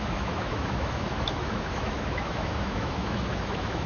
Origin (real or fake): fake